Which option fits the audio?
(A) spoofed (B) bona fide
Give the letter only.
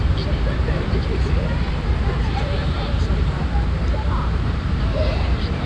A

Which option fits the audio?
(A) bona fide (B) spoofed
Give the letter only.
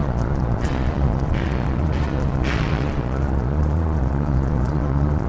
B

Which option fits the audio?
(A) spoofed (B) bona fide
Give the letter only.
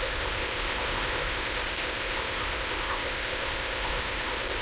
A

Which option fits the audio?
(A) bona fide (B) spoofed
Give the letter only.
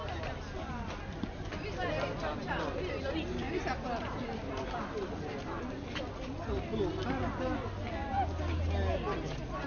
A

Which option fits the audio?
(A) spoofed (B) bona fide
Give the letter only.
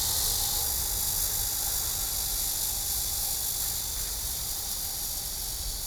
B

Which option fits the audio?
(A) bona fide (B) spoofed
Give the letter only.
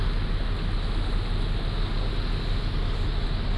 A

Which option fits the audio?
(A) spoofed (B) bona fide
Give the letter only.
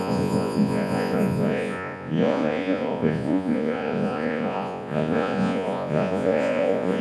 A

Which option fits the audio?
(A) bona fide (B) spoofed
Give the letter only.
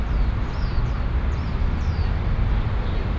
A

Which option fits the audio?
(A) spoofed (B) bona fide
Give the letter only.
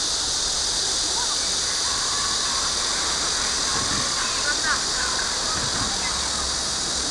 B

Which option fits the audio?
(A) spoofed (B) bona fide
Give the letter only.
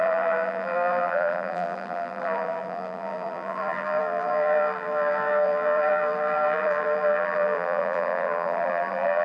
A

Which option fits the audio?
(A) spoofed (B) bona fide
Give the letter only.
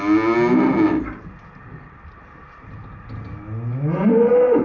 B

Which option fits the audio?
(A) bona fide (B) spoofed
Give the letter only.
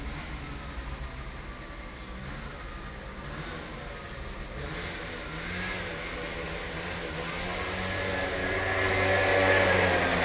A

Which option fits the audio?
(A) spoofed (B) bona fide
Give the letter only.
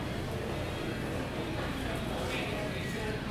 B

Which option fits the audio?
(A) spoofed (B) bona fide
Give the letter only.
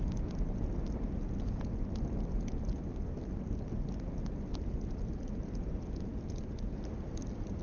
B